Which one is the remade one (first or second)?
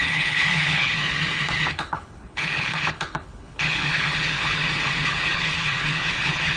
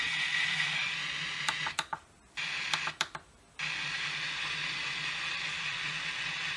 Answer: first